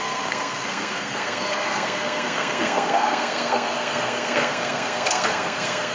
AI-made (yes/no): yes